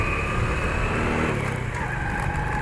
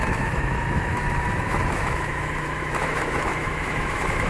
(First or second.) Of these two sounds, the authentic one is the first